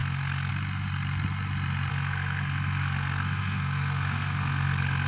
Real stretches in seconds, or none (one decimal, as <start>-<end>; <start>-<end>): 0.5-1.9